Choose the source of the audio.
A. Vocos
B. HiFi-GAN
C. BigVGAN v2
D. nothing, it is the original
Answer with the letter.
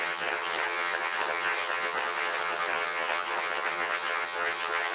B